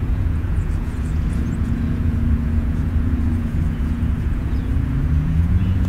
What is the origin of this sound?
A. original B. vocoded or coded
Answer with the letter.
B